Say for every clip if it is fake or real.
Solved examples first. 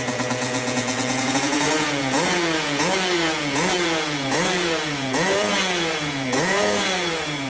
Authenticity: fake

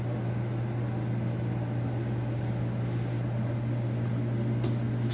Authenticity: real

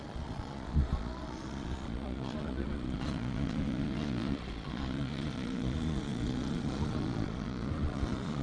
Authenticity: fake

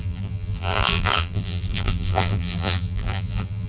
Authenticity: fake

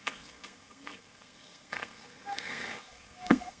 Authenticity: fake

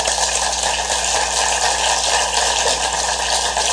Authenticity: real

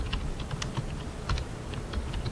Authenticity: real